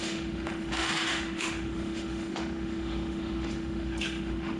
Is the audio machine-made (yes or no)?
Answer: yes